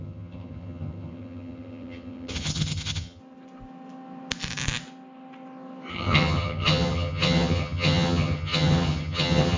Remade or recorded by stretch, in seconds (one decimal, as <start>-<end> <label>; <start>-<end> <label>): 0.0-3.2 remade; 3.2-5.9 recorded; 5.9-9.6 remade